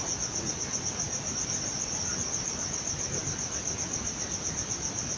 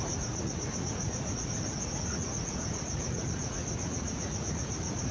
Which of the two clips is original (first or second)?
first